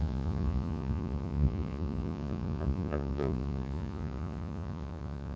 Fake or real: fake